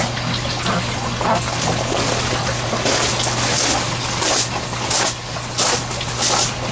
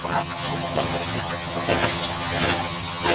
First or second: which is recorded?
first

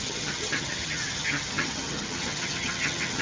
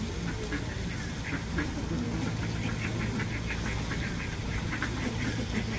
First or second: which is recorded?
second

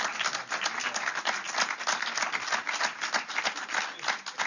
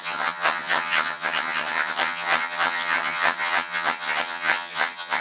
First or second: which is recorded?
first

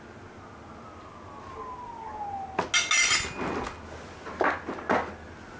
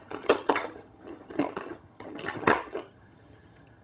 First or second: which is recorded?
first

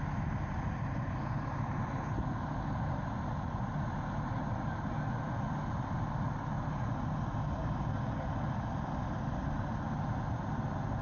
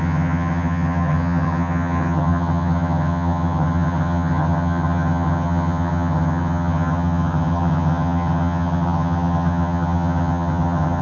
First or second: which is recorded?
first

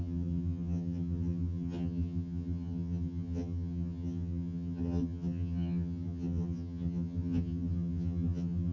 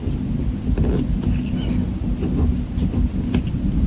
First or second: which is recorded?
second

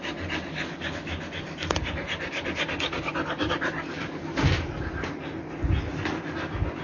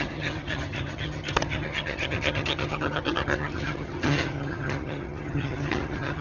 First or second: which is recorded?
first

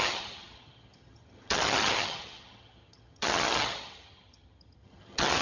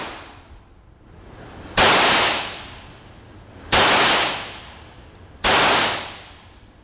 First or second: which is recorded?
second